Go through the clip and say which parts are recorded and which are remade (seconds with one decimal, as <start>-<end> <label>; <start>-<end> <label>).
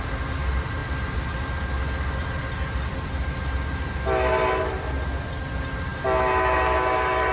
0.0-7.3 recorded